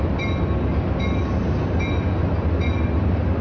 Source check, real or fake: real